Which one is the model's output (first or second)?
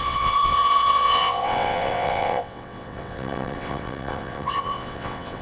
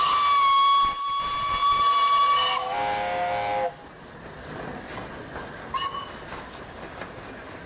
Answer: first